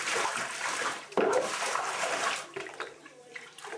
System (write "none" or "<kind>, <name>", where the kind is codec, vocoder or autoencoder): vocoder, BigVGAN v2